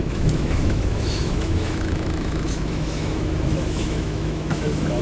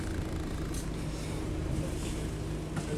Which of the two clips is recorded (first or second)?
second